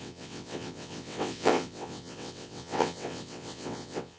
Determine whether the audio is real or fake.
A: fake